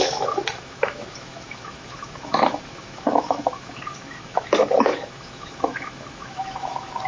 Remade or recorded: remade